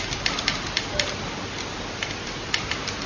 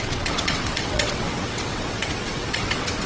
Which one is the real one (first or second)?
first